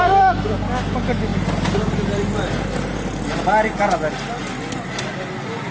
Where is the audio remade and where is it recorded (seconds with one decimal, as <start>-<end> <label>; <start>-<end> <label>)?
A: 0.0-5.7 recorded